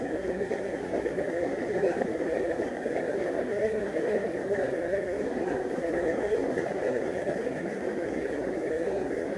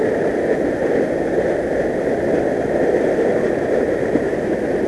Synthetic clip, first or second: first